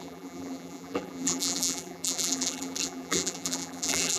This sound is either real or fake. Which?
fake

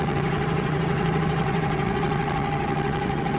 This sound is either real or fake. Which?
fake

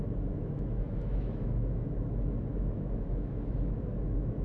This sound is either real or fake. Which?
fake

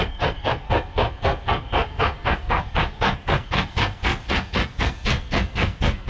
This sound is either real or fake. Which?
fake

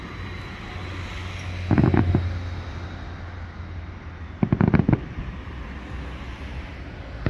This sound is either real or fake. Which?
real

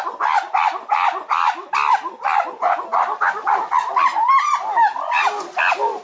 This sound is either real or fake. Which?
real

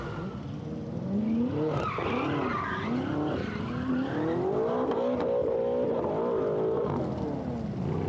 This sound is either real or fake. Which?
real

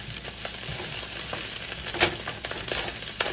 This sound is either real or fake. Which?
real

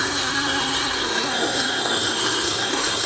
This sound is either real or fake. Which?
fake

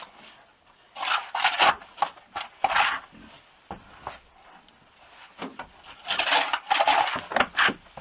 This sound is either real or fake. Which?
fake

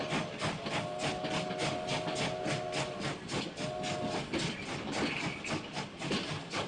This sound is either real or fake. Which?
real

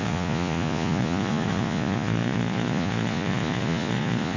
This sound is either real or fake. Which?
fake